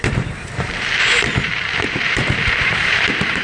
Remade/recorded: remade